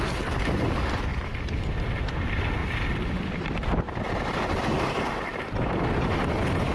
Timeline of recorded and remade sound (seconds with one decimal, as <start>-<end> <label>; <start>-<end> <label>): 0.0-1.1 recorded; 1.1-2.0 remade; 2.0-2.6 recorded; 2.6-4.4 remade; 4.4-5.3 recorded; 5.3-6.7 remade